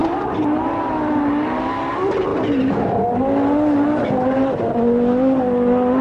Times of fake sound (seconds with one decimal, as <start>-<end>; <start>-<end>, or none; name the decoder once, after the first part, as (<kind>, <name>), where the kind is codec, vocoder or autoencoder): none